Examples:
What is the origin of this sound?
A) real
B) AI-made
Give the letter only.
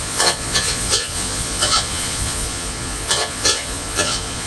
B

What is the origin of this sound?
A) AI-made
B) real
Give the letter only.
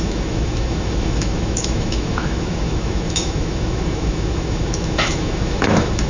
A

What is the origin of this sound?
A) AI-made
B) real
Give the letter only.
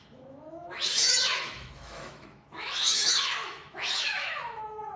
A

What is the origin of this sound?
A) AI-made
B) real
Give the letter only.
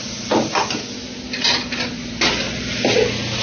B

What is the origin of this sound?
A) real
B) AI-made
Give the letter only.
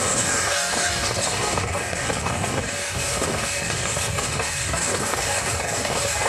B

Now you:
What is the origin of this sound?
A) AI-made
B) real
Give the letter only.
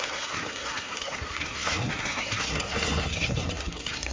A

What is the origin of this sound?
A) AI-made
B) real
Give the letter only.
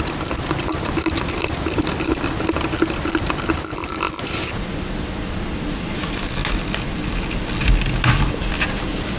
B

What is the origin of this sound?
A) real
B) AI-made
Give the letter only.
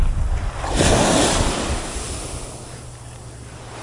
A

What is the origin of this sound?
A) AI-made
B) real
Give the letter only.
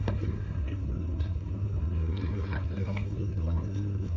A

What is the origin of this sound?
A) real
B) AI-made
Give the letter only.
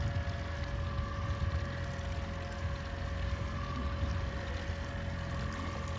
A